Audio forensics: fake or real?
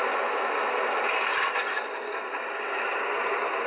real